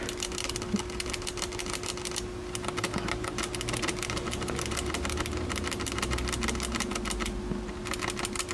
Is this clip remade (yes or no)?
no